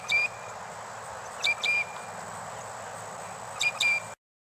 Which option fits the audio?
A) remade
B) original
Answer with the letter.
B